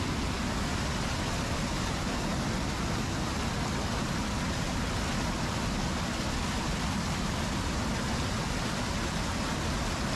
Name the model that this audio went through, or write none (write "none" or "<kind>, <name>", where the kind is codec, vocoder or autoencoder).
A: none